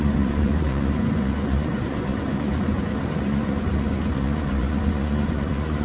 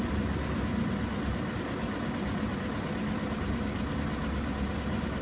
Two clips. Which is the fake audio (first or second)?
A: first